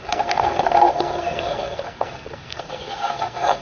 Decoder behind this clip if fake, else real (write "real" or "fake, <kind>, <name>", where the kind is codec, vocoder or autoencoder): fake, codec, SNAC